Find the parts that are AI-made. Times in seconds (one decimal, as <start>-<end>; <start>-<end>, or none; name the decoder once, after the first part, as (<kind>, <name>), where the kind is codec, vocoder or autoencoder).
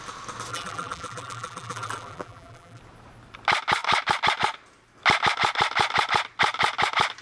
0.5-2.8 (vocoder, BigVGAN v2)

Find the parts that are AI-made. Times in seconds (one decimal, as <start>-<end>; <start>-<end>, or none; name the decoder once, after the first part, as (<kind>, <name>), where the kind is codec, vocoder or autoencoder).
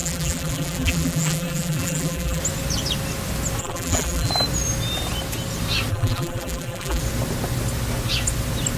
0.0-2.4 (vocoder, BigVGAN v2); 3.6-4.3; 5.9-7.0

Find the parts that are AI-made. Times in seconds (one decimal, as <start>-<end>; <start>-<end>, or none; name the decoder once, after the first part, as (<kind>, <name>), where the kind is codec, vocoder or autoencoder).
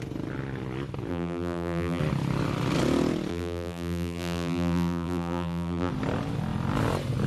1.1-2.0 (vocoder, BigVGAN v2); 3.3-5.9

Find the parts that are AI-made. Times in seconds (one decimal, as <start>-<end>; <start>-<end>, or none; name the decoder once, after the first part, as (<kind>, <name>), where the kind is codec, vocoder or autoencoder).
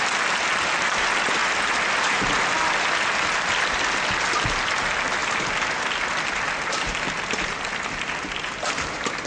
none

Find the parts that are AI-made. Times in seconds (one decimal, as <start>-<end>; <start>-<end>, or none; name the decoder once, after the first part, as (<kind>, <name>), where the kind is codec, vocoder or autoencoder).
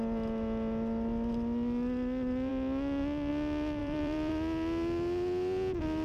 3.8-4.3 (vocoder, BigVGAN v2)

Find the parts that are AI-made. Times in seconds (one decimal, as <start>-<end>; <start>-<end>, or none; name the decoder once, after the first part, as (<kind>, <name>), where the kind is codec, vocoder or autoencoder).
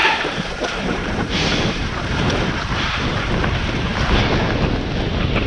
0.0-3.3 (vocoder, BigVGAN v2)